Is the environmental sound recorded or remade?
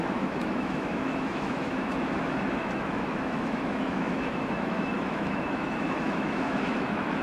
remade